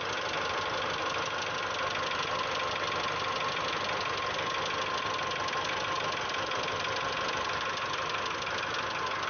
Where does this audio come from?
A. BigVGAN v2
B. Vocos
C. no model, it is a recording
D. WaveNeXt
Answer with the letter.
C